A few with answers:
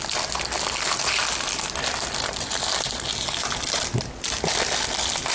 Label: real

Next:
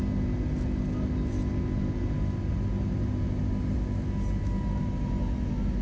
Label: real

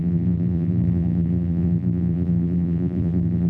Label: fake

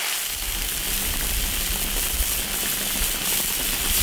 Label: real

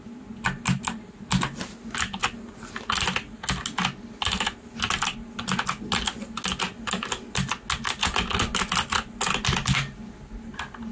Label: real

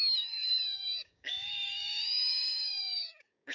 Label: fake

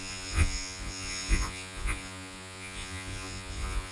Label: fake